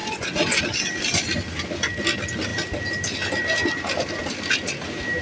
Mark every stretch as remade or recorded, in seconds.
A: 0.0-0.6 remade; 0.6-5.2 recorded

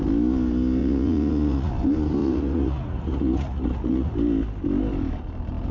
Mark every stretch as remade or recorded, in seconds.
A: 0.0-0.8 recorded; 0.8-1.7 remade; 1.7-2.2 recorded; 2.2-4.1 remade; 4.1-5.7 recorded

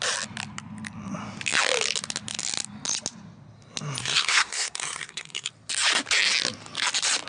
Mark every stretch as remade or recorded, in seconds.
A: 0.0-4.0 recorded; 4.0-5.5 remade; 5.5-7.3 recorded

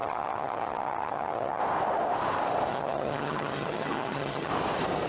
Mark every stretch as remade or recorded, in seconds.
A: 0.0-1.6 remade; 1.6-2.7 recorded; 2.7-4.5 remade; 4.5-5.1 recorded

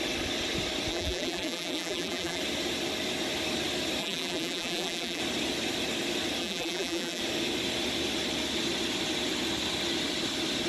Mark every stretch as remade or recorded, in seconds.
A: 0.0-0.9 recorded; 0.9-2.4 remade; 2.4-4.0 recorded; 4.0-5.2 remade; 5.2-6.4 recorded; 6.4-7.2 remade; 7.2-10.7 recorded

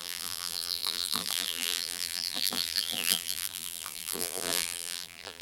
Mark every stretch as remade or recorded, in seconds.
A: 0.0-5.4 remade